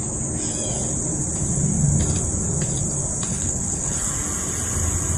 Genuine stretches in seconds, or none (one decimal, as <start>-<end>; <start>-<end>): 0.0-3.3; 4.1-5.2